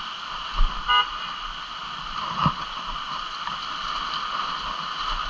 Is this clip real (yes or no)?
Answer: yes